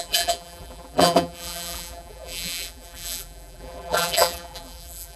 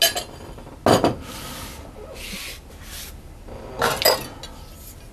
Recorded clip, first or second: second